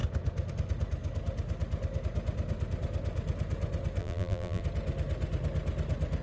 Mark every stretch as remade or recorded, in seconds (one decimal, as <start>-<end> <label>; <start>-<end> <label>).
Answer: 0.0-4.0 recorded; 4.0-4.6 remade; 4.6-6.2 recorded